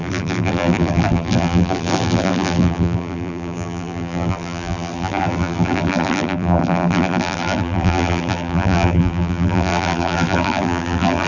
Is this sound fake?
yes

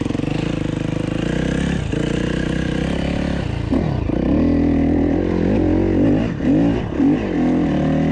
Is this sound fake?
no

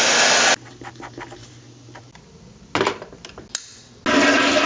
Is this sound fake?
no